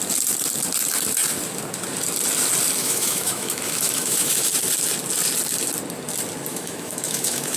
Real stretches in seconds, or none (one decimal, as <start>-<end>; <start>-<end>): 0.0-2.8; 4.5-6.5